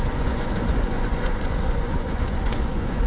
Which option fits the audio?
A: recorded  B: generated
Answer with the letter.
B